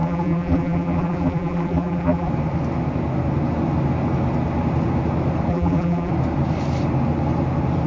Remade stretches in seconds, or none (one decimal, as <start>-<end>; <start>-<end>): 0.0-2.3; 5.5-6.1